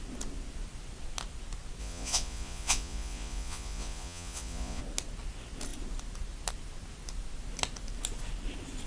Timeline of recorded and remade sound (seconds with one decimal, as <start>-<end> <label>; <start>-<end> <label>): 0.0-1.8 recorded; 1.8-4.8 remade; 4.8-8.9 recorded